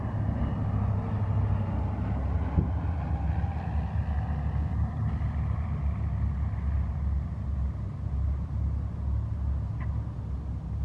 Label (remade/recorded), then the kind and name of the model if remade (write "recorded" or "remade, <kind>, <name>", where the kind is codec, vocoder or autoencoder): recorded